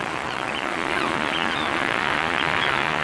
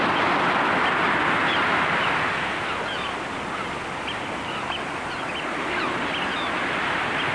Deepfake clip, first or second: first